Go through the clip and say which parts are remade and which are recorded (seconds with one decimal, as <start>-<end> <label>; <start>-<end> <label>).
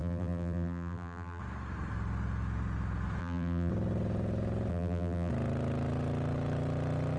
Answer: 0.0-1.4 remade; 1.4-3.2 recorded; 3.2-3.7 remade; 3.7-4.7 recorded; 4.7-5.3 remade; 5.3-7.2 recorded